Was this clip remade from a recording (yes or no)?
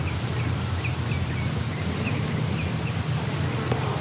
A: no